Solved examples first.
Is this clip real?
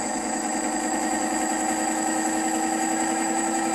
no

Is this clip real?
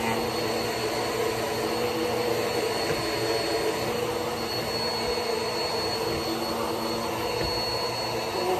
yes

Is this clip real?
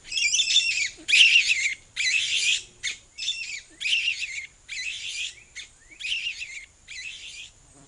no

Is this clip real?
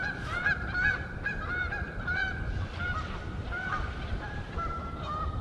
no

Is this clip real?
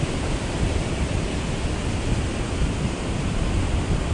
yes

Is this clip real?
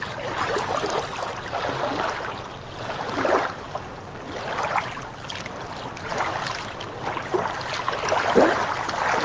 yes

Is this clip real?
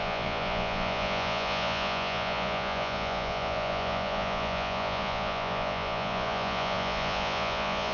no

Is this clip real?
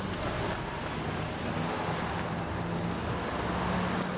yes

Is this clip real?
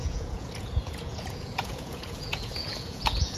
no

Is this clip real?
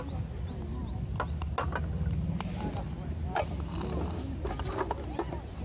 yes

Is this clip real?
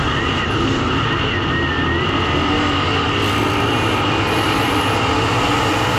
yes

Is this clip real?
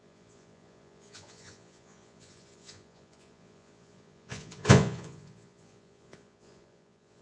no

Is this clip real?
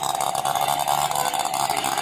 yes